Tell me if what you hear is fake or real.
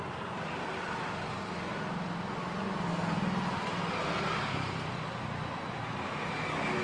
real